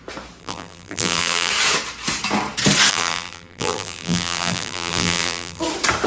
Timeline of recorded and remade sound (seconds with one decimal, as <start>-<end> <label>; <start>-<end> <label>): 0.0-0.4 recorded; 0.4-1.5 remade; 1.5-2.9 recorded; 2.9-5.6 remade; 5.6-6.1 recorded